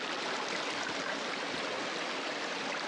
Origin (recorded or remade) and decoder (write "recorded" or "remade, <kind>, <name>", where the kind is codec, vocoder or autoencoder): recorded